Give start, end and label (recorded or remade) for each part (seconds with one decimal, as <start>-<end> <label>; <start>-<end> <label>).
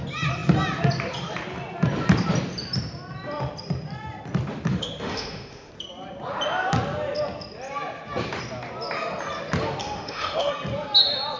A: 0.0-4.7 recorded; 4.7-5.7 remade; 5.7-9.8 recorded; 9.8-10.5 remade; 10.5-11.4 recorded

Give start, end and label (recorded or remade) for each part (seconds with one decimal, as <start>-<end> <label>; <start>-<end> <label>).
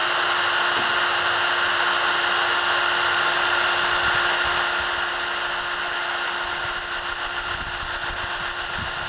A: 0.0-9.1 recorded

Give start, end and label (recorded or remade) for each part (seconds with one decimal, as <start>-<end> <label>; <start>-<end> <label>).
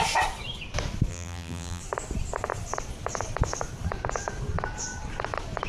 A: 0.0-1.1 recorded; 1.1-1.8 remade; 1.8-5.7 recorded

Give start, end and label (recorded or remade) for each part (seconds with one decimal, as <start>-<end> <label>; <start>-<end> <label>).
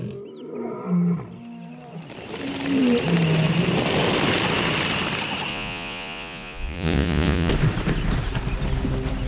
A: 0.0-5.5 recorded; 5.5-7.5 remade; 7.5-9.3 recorded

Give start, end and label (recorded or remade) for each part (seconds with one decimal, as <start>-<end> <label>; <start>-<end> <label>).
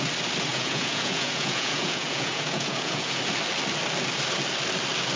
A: 0.0-0.5 recorded; 0.5-3.2 remade; 3.2-5.2 recorded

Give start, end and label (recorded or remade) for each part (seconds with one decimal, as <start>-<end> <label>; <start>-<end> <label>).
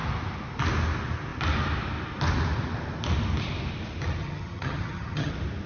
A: 0.0-4.2 recorded; 4.2-5.3 remade; 5.3-5.7 recorded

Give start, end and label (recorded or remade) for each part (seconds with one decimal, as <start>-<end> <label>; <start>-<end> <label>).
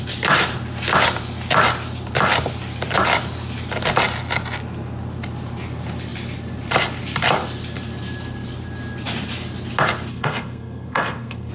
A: 0.0-10.1 recorded; 10.1-11.5 remade